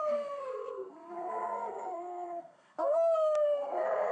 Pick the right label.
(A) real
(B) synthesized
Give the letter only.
B